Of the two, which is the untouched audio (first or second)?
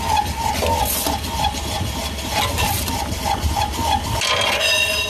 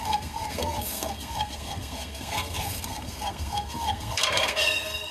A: first